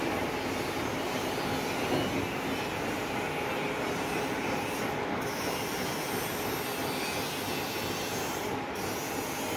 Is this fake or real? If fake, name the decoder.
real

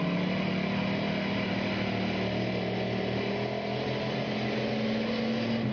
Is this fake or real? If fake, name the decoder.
real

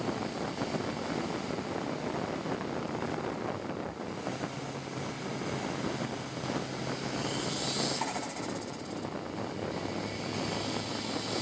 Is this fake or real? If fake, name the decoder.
real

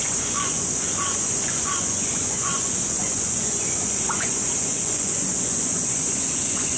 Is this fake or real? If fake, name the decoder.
fake, vocoder, Vocos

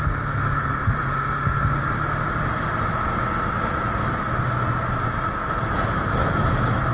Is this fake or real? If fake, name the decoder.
real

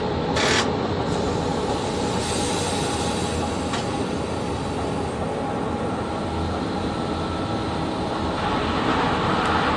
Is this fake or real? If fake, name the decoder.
real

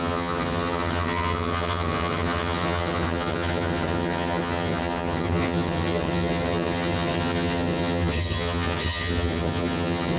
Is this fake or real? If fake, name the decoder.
fake, vocoder, HiFi-GAN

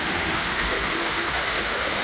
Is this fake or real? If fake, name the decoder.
fake, autoencoder, DAC-VAE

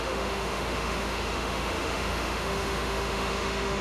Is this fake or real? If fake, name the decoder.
fake, autoencoder, DAC-VAE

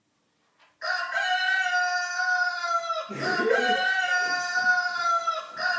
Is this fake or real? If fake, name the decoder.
real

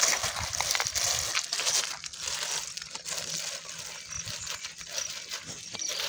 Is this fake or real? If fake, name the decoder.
real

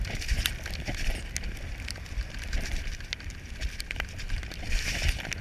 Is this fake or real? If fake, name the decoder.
real